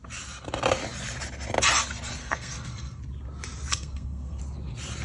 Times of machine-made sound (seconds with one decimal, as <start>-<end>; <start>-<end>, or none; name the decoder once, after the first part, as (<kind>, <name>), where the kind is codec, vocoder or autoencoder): 2.2-3.0 (codec, SNAC); 3.7-4.4